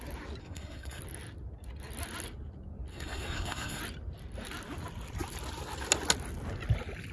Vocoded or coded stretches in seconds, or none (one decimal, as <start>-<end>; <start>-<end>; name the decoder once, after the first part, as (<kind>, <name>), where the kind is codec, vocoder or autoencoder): 0.4-1.0 (codec, SNAC); 2.9-3.8